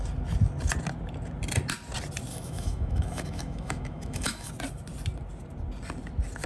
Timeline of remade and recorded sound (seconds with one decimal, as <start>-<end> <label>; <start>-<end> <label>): 0.0-2.3 recorded; 2.3-4.5 remade; 4.5-6.5 recorded